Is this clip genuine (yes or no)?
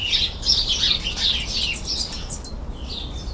yes